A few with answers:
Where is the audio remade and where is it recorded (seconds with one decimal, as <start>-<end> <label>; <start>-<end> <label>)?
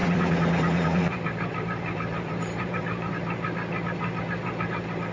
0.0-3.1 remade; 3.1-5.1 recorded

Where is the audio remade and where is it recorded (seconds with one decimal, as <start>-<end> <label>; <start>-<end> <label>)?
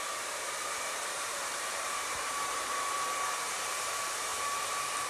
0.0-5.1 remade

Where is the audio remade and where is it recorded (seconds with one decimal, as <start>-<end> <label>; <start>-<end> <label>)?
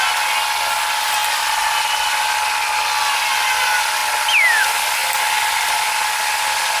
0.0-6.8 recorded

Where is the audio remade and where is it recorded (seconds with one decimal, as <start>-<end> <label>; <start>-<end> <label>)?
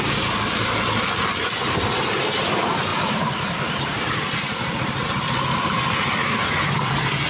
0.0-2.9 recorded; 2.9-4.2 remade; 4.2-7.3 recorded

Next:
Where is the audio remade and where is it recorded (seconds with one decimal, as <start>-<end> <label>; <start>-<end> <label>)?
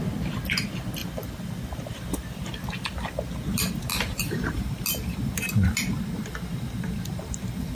0.0-1.0 recorded; 1.0-2.4 remade; 2.4-7.7 recorded